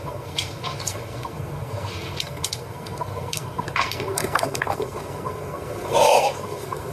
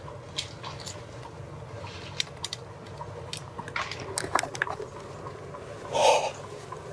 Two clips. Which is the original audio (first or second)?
second